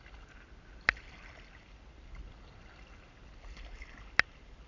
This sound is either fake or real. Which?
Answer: real